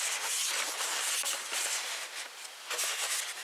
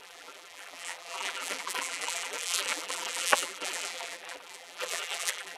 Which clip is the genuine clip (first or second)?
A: first